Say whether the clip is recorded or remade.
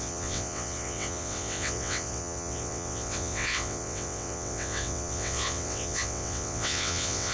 remade